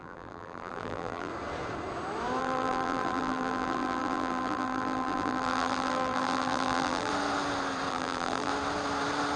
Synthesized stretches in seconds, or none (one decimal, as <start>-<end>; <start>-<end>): 0.0-1.3; 2.4-7.1; 7.9-8.5